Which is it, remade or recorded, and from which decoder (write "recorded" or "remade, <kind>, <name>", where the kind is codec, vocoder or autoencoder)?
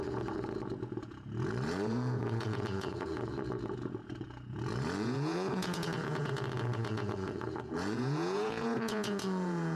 remade, vocoder, Vocos